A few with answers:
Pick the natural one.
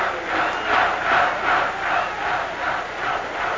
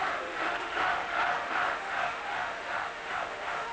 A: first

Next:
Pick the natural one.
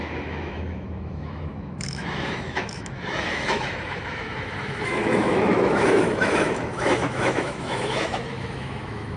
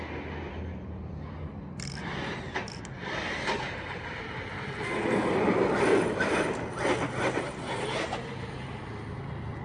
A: second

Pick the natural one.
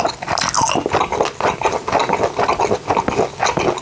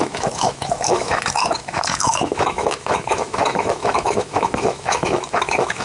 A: first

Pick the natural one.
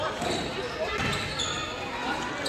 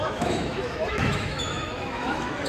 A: first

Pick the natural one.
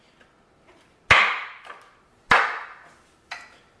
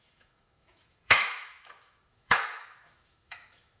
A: first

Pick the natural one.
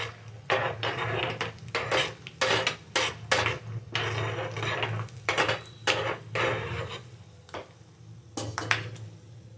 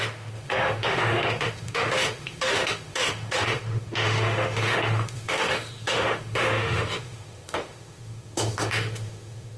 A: first